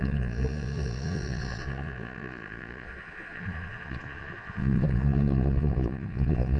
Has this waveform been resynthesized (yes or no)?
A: yes